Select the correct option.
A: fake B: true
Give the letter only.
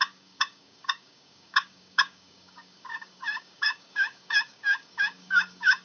A